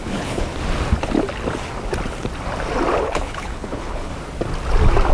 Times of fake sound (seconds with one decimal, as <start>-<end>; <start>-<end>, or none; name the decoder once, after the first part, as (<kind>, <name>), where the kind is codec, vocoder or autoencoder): 0.0-0.5 (codec, HILCodec); 3.0-4.1